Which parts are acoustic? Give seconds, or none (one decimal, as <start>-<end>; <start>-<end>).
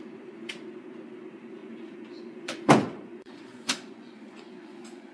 0.0-1.6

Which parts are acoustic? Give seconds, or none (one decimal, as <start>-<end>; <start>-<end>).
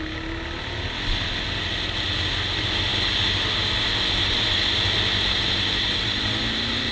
0.0-6.9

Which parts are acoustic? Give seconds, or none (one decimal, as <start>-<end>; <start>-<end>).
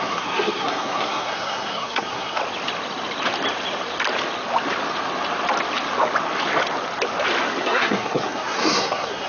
2.4-7.6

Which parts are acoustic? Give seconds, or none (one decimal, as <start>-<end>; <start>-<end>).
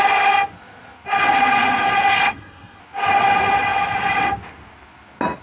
0.0-2.2; 2.8-5.4